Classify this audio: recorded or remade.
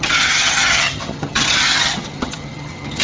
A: remade